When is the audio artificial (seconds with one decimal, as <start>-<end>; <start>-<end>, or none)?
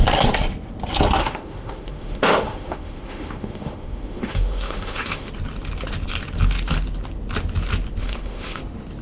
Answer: 1.2-5.3; 8.0-8.6